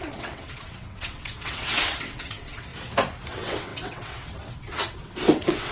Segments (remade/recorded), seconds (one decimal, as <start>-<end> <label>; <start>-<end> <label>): 0.0-2.7 remade; 2.7-3.3 recorded; 3.3-5.7 remade